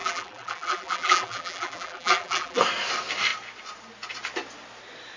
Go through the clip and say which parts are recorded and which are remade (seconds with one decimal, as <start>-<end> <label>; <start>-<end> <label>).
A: 0.0-2.6 remade; 2.6-5.2 recorded